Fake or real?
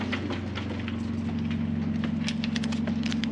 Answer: real